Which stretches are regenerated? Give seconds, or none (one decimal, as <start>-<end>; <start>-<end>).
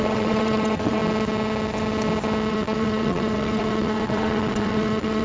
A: 0.0-1.0; 2.5-5.2